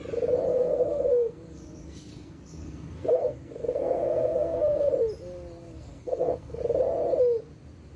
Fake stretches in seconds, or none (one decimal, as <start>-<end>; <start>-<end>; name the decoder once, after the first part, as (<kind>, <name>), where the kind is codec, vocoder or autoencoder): 0.5-4.9 (codec, SNAC); 5.6-6.6